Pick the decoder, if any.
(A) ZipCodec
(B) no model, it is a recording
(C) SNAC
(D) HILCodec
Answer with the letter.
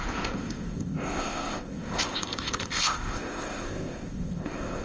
A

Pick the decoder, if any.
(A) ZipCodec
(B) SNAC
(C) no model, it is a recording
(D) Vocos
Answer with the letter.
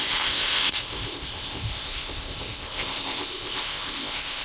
A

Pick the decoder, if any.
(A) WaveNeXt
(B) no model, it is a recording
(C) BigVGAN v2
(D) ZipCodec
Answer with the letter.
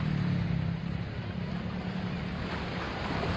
B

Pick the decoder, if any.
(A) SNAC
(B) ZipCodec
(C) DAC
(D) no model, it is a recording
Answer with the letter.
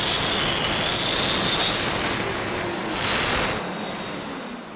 D